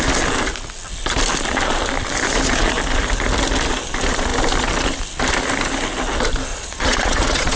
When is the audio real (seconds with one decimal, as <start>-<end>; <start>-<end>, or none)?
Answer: 0.0-6.5